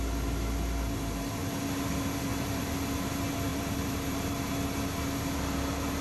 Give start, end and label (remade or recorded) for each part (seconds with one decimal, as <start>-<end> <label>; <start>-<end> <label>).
0.0-2.3 recorded; 2.3-3.1 remade; 3.1-3.5 recorded; 3.5-4.5 remade; 4.5-6.0 recorded